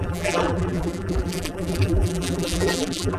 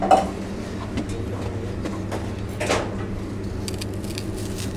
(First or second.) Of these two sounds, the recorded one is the second